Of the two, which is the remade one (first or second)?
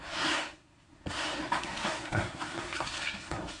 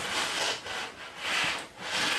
first